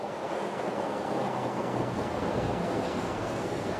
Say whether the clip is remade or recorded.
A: remade